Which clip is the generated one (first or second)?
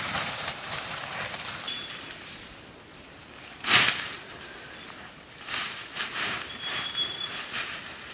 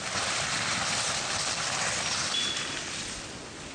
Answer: first